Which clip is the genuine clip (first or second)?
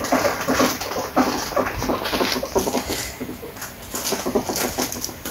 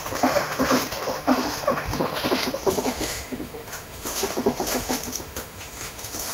first